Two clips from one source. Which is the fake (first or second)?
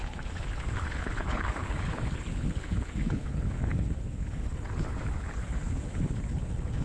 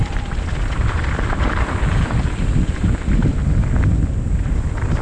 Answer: first